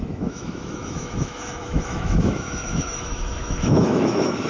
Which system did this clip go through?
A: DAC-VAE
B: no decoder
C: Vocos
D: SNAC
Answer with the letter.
A